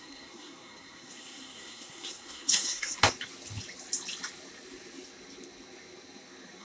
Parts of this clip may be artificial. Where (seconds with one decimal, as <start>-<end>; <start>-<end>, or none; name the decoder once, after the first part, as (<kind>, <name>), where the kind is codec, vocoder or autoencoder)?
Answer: 0.0-3.0 (codec, SNAC)